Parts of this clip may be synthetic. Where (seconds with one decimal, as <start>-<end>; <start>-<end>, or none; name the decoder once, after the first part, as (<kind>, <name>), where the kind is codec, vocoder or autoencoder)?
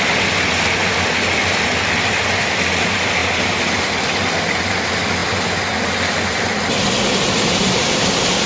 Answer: none